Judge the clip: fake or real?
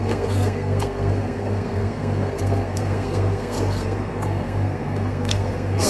fake